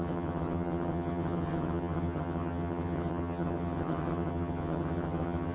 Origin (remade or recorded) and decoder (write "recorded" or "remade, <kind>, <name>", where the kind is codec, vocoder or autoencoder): remade, vocoder, HiFi-GAN